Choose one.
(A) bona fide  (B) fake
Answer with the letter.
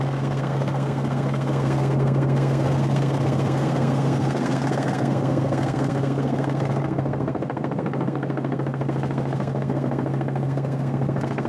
B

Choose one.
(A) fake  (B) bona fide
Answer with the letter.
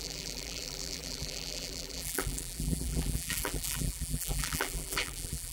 A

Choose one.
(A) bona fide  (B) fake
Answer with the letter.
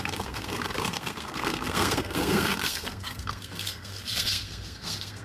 B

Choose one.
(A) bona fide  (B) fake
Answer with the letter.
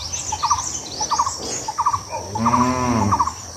A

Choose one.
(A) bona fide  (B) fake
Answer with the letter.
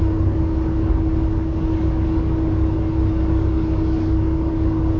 B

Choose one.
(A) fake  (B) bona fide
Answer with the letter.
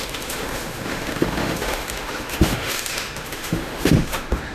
A